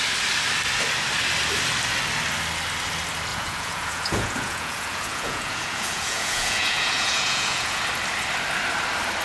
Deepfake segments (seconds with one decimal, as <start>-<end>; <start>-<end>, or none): 3.3-7.8